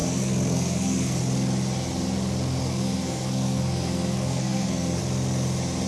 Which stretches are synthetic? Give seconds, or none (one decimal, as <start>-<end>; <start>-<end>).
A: 0.0-1.2; 2.6-5.0